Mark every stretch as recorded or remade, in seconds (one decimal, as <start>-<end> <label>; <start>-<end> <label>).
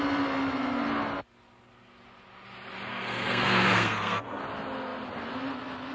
0.0-2.9 recorded; 2.9-4.4 remade; 4.4-5.9 recorded